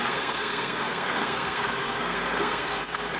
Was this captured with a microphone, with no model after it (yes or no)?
no